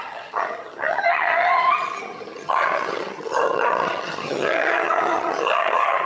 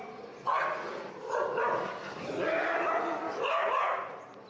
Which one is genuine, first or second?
second